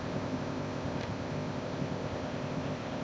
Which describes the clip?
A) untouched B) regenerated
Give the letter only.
B